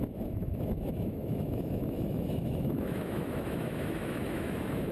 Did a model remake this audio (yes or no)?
yes